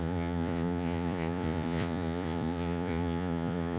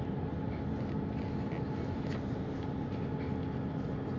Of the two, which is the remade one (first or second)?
first